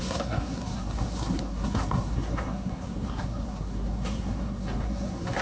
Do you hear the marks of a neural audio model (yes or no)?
yes